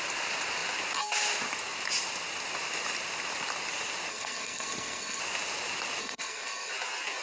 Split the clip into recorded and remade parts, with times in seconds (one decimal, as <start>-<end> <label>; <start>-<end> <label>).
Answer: 0.0-4.1 recorded; 4.1-5.2 remade; 5.2-6.0 recorded; 6.0-6.7 remade; 6.7-7.2 recorded

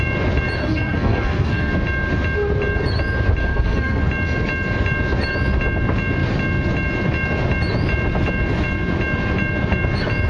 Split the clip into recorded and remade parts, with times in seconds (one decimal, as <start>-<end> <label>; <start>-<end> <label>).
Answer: 0.0-0.6 recorded; 0.6-1.7 remade; 1.7-3.4 recorded; 3.4-4.0 remade; 4.0-10.3 recorded

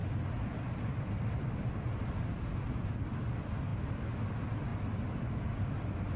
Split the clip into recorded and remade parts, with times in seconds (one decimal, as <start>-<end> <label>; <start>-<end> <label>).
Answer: 0.0-6.2 recorded

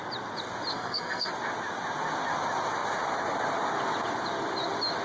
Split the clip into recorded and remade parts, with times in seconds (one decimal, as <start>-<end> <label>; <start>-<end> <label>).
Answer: 0.0-0.7 recorded; 0.7-1.3 remade; 1.3-5.0 recorded

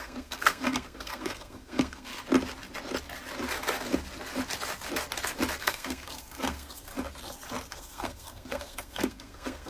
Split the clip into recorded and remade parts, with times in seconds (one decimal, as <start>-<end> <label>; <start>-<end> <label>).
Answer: 0.0-2.1 remade; 2.1-5.6 recorded; 5.6-6.9 remade; 6.9-7.7 recorded; 7.7-9.7 remade